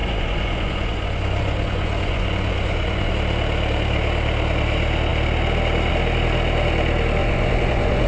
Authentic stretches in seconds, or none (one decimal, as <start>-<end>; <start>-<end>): 3.1-7.2